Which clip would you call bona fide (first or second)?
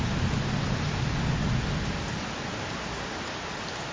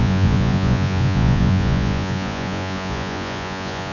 first